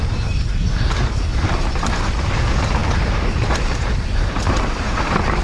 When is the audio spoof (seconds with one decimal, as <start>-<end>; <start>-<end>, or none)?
2.8-5.4